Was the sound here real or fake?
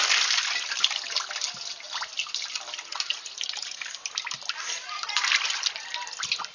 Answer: real